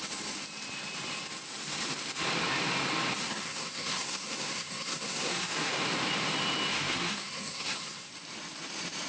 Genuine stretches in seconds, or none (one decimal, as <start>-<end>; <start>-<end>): 0.0-3.2; 5.8-6.7; 8.1-9.1